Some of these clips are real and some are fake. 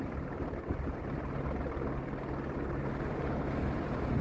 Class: real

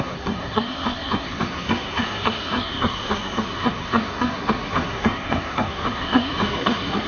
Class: fake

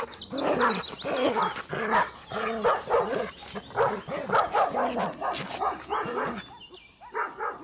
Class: real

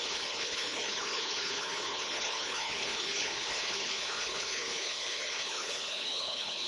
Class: fake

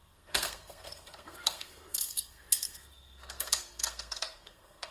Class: fake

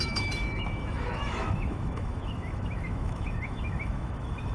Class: fake